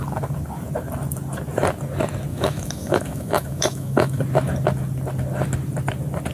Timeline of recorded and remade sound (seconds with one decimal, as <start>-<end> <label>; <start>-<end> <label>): 0.0-2.3 recorded; 2.3-4.2 remade; 4.2-6.3 recorded